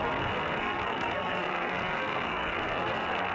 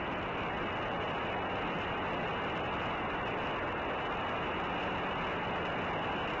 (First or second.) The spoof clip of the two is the first